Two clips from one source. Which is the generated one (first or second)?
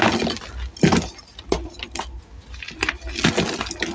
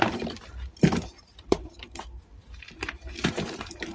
second